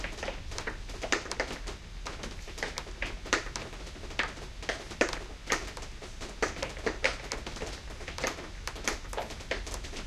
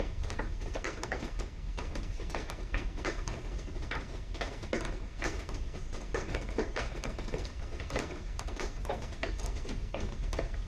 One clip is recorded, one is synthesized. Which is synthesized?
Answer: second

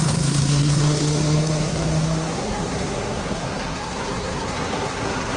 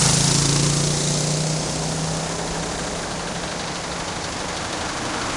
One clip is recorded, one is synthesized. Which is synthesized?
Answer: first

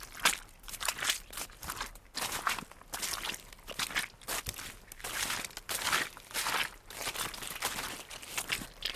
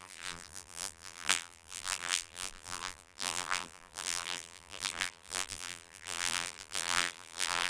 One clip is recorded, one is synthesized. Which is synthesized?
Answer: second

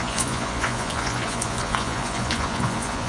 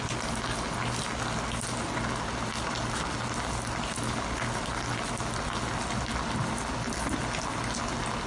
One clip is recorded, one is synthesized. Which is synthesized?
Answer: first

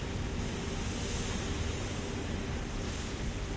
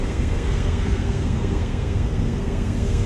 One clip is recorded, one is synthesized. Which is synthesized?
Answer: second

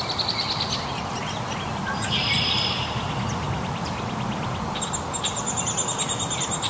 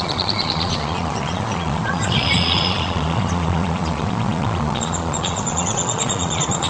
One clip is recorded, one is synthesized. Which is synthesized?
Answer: second